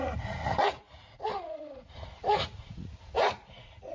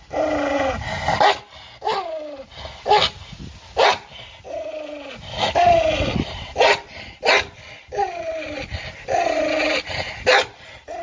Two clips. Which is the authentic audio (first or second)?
second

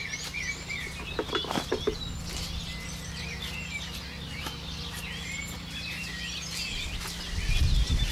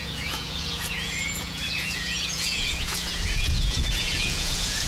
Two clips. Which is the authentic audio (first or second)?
first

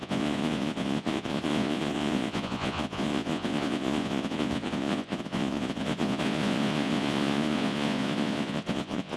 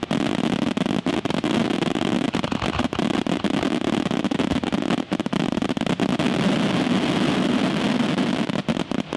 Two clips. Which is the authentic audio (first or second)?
second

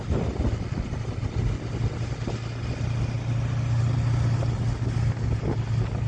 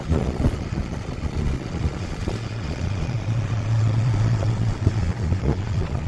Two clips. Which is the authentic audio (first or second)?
first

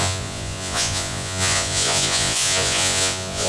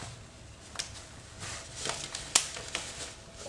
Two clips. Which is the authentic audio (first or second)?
second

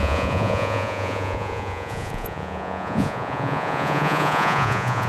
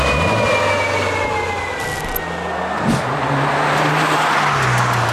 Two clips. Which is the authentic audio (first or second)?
second